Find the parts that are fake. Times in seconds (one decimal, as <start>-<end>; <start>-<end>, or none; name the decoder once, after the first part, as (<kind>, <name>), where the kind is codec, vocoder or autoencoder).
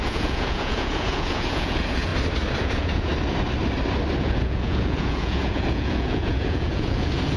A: 0.0-2.1 (vocoder, Vocos); 2.6-3.1; 4.2-7.4